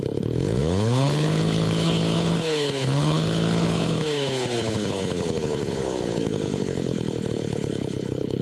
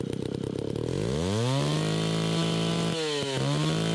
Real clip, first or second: second